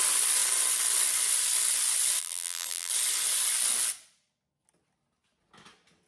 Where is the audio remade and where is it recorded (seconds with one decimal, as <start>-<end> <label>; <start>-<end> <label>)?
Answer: 0.0-2.2 recorded; 2.2-2.9 remade; 2.9-6.1 recorded